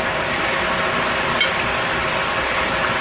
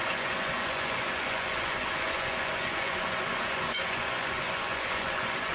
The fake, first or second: second